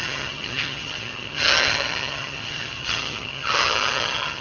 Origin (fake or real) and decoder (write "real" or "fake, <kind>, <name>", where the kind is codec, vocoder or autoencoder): fake, vocoder, HiFi-GAN